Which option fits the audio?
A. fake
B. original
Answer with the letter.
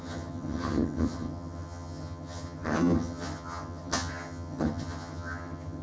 A